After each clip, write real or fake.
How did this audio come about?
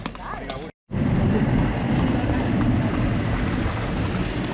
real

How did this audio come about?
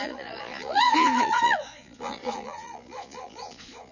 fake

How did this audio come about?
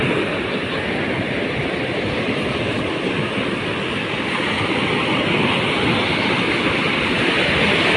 real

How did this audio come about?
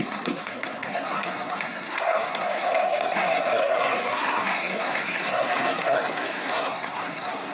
fake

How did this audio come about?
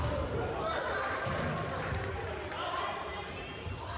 fake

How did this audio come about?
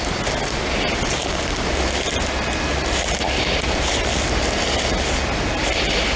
real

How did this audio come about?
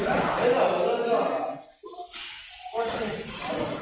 real